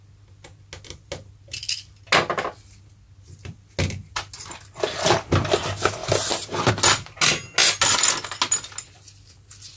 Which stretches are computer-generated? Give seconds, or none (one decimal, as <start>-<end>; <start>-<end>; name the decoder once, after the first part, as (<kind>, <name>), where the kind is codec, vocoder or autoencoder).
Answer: none